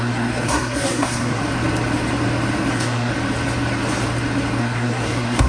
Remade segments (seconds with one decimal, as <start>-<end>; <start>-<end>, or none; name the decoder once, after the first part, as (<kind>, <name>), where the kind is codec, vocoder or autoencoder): 0.0-1.4 (codec, SNAC); 2.7-3.1; 4.6-5.5